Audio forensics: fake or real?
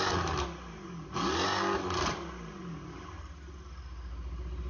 real